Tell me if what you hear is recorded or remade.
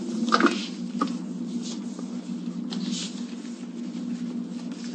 recorded